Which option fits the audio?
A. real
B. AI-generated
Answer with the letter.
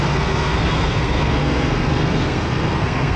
B